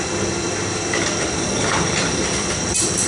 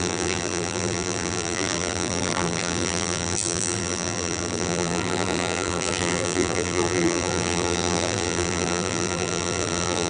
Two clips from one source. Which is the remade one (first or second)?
second